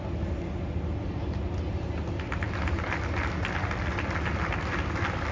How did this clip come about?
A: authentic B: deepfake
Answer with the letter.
A